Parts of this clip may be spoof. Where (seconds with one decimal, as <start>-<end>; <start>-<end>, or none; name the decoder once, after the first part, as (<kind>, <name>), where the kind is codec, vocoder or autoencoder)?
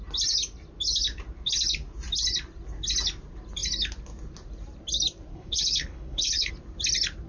5.3-6.5 (codec, HILCodec)